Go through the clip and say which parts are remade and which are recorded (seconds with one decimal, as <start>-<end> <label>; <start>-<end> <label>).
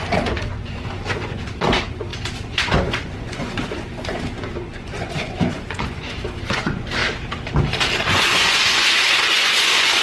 0.0-7.0 remade; 7.0-8.1 recorded; 8.1-10.0 remade